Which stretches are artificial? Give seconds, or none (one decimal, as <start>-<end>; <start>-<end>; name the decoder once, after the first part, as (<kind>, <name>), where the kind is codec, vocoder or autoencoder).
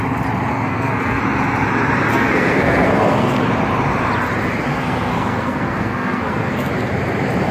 0.5-1.2 (codec, SNAC); 2.1-3.4; 4.7-6.7